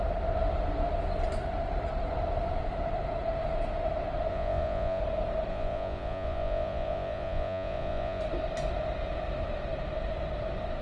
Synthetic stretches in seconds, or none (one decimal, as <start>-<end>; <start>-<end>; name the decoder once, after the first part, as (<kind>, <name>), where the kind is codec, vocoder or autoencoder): 4.3-5.0 (vocoder, Vocos); 5.5-8.2